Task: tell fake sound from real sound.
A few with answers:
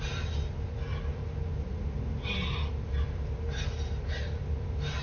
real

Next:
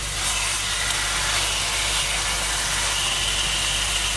real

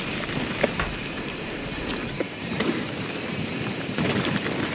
real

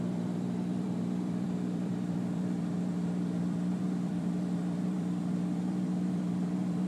fake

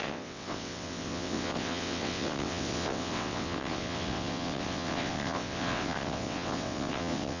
fake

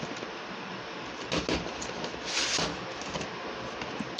real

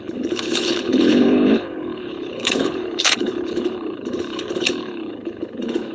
fake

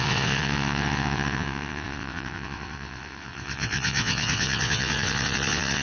fake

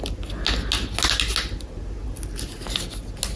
real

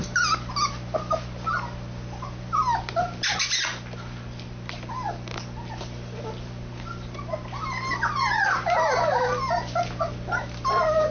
real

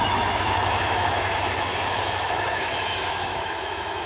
fake